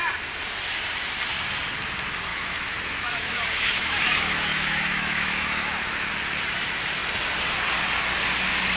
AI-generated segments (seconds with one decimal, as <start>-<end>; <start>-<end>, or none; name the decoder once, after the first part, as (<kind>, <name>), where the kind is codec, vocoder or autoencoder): 2.3-6.1 (autoencoder, DAC-VAE)